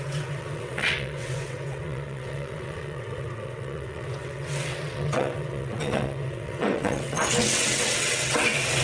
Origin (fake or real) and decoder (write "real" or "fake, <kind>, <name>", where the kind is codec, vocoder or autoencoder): fake, vocoder, WaveNeXt